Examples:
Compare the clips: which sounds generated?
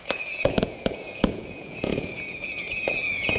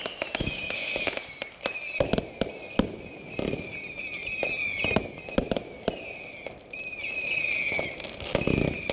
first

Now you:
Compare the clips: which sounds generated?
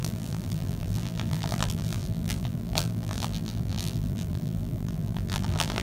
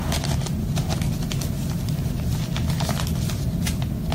first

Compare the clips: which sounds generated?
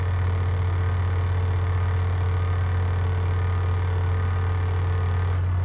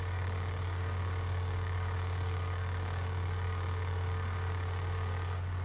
second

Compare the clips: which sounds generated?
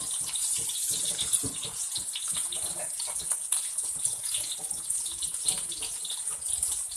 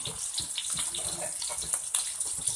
first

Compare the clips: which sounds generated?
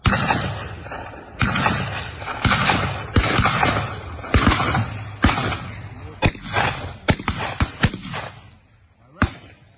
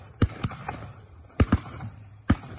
second